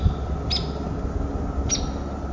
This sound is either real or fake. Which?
real